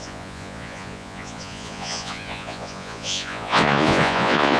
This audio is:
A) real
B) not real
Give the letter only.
B